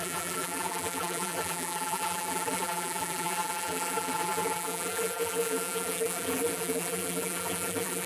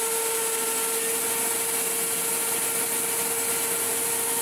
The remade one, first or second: first